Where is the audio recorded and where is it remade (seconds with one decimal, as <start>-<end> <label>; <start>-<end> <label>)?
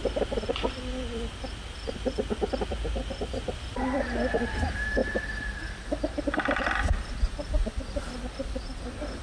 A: 0.0-9.2 recorded